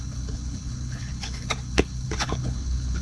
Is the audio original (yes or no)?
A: no